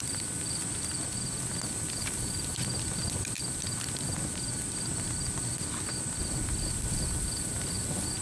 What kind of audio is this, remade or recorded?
recorded